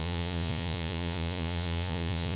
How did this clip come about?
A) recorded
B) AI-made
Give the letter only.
B